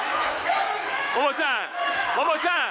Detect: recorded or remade remade